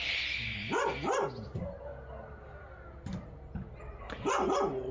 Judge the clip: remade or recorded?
recorded